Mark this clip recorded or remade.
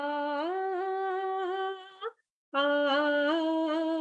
recorded